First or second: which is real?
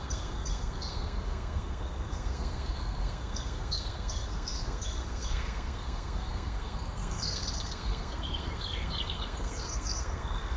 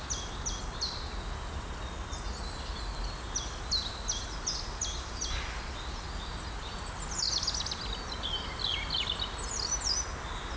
second